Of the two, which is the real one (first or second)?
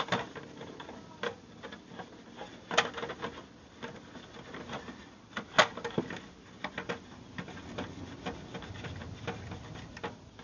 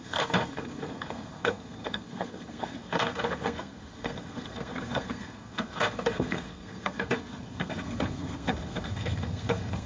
first